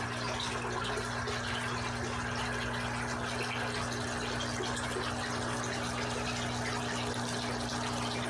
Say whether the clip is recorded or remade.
recorded